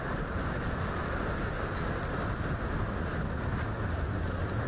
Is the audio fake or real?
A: real